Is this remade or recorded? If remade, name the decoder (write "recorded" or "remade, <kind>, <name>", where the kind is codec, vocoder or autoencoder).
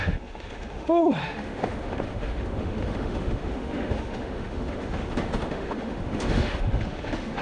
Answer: remade, autoencoder, DAC-VAE